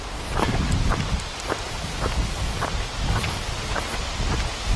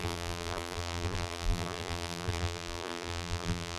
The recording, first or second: first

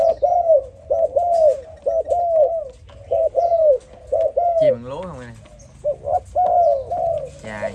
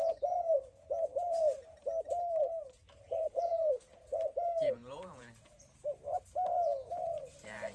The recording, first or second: first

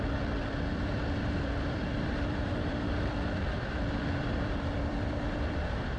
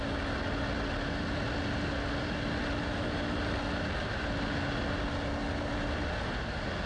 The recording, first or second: second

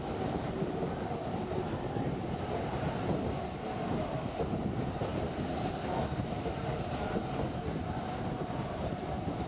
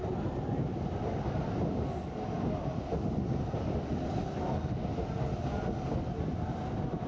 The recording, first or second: second